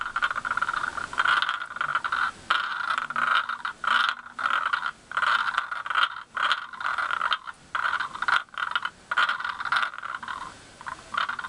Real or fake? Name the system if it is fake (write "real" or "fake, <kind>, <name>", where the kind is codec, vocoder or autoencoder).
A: real